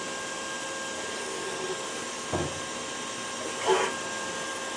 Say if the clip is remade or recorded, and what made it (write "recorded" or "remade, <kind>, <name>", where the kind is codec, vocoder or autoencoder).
recorded